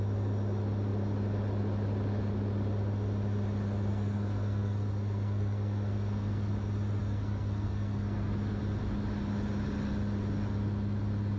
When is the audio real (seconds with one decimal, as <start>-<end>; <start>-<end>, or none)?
0.0-3.9; 6.5-7.0; 8.6-11.4